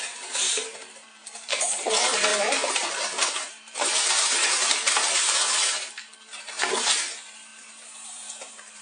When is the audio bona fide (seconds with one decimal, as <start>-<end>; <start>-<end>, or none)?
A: none